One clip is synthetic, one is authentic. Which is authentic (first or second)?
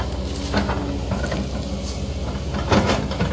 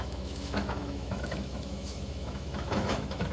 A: first